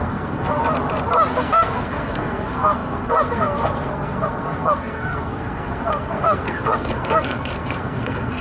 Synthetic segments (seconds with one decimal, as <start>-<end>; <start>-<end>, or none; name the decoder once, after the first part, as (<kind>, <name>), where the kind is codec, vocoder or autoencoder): 0.0-0.6 (codec, SNAC); 1.3-8.4